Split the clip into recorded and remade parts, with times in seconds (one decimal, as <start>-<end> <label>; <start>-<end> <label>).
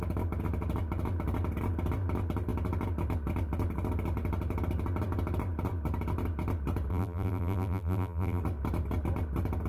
0.0-6.9 recorded; 6.9-8.4 remade; 8.4-9.7 recorded